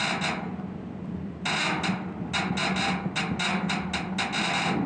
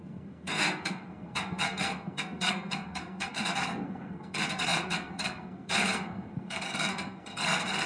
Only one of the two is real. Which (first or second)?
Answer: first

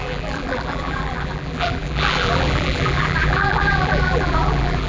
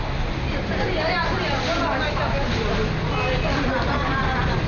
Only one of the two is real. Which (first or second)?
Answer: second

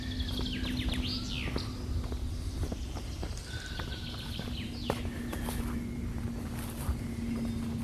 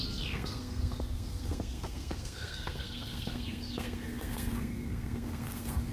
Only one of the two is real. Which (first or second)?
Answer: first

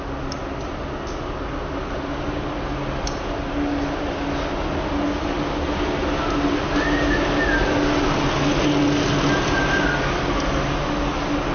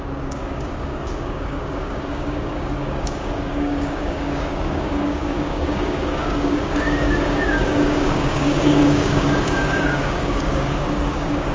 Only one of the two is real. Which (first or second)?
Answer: first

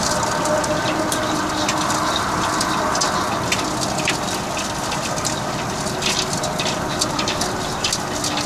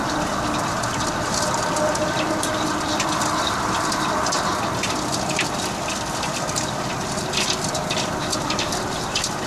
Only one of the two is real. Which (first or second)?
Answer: first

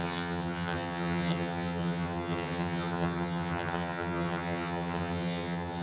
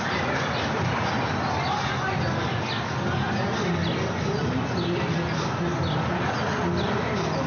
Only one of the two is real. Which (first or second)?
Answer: second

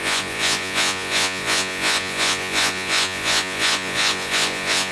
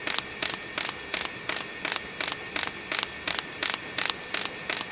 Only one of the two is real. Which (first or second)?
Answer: second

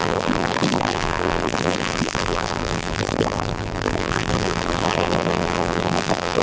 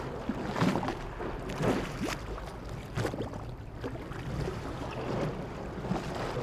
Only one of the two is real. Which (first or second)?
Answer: second